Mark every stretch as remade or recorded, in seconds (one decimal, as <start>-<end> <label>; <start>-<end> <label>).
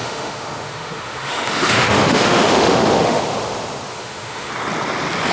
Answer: 0.0-3.2 remade; 3.2-3.9 recorded; 3.9-4.5 remade; 4.5-5.3 recorded